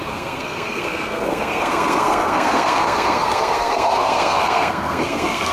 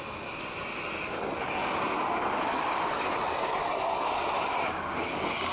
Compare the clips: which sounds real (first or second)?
second